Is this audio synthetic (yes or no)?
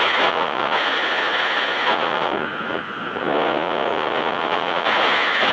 yes